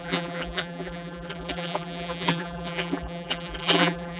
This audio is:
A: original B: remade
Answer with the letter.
B